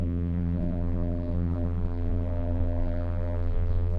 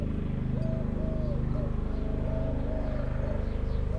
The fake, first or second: first